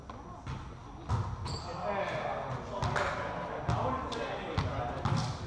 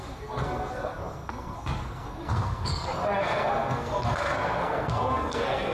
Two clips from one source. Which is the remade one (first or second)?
second